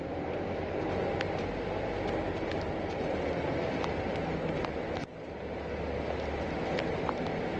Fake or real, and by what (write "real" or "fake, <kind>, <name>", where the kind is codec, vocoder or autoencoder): real